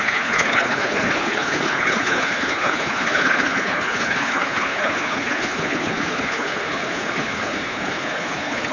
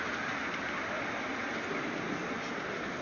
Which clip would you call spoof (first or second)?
first